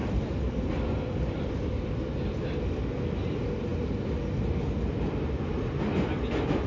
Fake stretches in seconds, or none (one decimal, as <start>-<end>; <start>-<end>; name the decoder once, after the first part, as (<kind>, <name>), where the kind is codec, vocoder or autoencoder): none